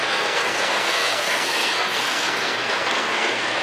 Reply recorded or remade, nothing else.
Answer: remade